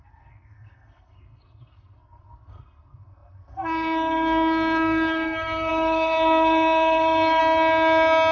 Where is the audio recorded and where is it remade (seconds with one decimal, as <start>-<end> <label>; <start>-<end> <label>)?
0.0-7.4 remade; 7.4-8.3 recorded